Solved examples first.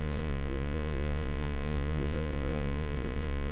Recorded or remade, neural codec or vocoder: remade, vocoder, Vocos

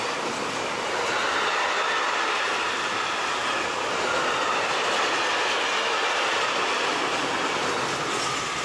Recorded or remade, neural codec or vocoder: recorded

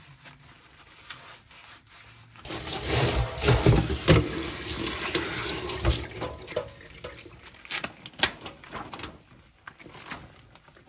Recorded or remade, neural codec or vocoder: recorded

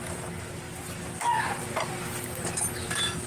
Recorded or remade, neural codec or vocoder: recorded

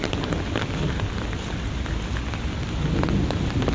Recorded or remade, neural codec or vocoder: recorded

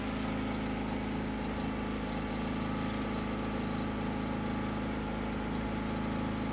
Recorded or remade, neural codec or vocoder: recorded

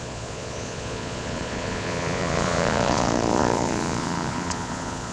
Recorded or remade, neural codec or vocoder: remade, vocoder, Vocos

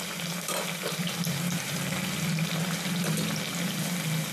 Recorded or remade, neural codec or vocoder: recorded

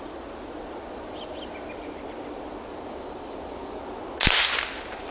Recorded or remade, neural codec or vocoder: recorded